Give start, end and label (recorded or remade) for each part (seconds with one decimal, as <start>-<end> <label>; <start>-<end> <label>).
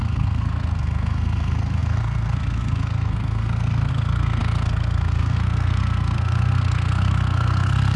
0.0-8.0 remade